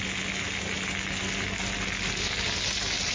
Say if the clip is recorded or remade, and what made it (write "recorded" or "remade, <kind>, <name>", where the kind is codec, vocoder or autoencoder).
recorded